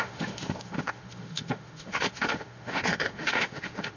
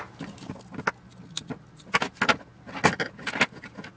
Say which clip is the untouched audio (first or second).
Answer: second